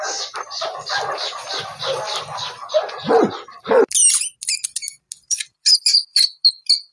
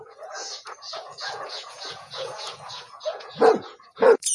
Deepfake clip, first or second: second